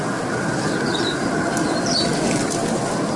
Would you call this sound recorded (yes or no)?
no